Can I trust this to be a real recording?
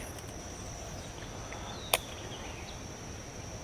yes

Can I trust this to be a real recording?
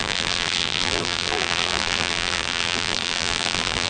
no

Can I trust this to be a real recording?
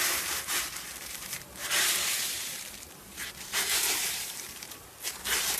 no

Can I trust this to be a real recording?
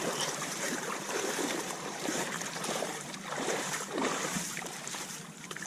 no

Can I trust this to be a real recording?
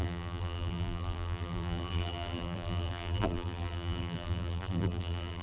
no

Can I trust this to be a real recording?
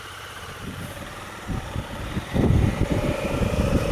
no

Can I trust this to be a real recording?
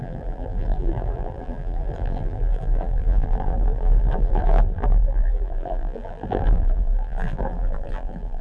no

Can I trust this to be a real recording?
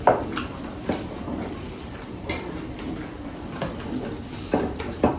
no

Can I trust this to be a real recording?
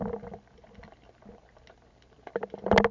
yes